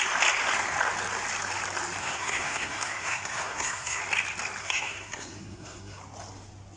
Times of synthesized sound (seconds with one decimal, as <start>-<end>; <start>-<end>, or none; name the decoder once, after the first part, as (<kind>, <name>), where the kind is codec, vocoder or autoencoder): 2.0-4.0 (codec, SNAC); 4.6-6.0